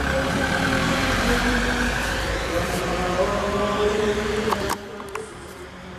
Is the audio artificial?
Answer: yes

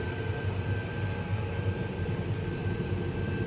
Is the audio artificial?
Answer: yes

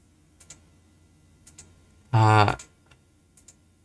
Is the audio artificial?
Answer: no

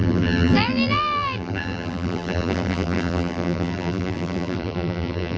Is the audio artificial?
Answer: yes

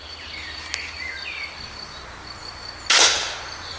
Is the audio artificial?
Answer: no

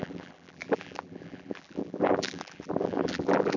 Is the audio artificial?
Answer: yes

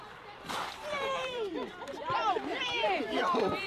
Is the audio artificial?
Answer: yes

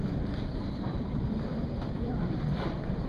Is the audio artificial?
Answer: yes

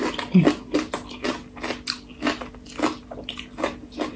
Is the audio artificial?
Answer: no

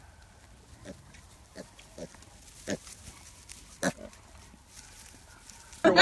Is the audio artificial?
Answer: no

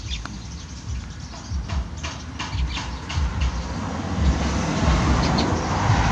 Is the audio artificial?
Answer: no